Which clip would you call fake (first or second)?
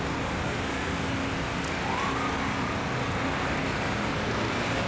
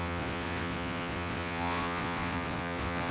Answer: second